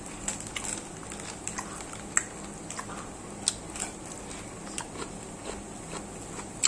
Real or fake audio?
real